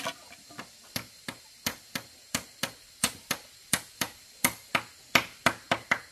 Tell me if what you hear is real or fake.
real